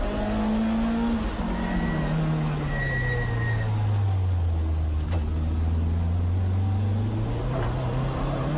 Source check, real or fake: real